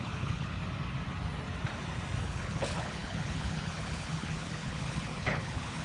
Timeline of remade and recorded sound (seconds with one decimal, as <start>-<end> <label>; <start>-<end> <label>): 0.0-0.6 remade; 0.6-2.2 recorded; 2.2-5.8 remade

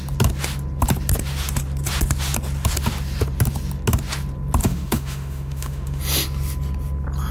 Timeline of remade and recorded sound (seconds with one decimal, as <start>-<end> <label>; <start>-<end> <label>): 0.0-4.6 recorded; 4.6-6.0 remade; 6.0-7.3 recorded

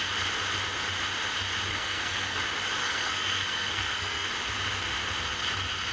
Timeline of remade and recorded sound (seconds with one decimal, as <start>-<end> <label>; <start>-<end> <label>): 0.0-1.7 recorded; 1.7-2.4 remade; 2.4-2.8 recorded; 2.8-4.3 remade; 4.3-5.9 recorded

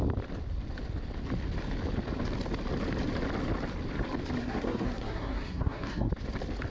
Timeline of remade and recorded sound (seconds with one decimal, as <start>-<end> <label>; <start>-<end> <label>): 0.0-4.4 recorded; 4.4-6.1 remade; 6.1-6.7 recorded

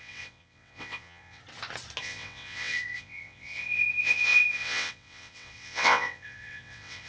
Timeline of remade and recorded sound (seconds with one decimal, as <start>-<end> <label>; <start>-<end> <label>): 0.0-1.4 remade; 1.4-2.0 recorded; 2.0-7.1 remade